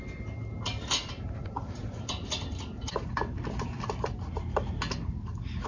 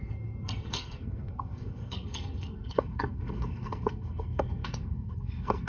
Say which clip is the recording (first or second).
first